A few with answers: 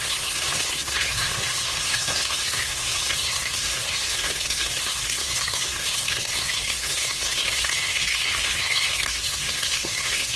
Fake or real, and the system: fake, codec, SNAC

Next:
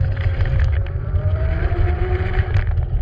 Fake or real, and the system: fake, vocoder, BigVGAN v2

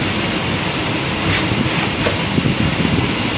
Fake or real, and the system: fake, vocoder, BigVGAN v2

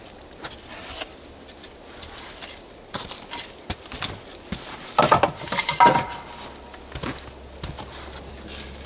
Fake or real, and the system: real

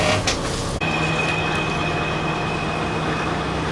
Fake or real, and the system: real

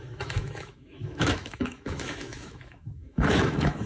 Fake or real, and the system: fake, autoencoder, DAC-VAE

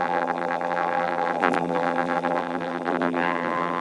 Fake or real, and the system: fake, vocoder, BigVGAN v2